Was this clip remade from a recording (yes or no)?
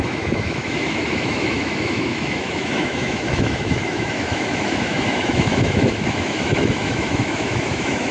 yes